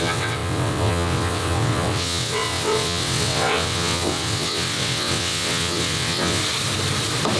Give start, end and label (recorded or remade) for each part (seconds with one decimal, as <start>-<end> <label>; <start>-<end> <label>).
0.0-6.4 remade; 6.4-7.4 recorded